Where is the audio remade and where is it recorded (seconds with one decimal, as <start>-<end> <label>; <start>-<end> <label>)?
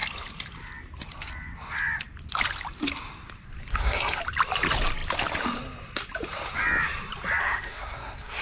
0.0-3.7 recorded; 3.7-4.2 remade; 4.2-7.4 recorded; 7.4-8.4 remade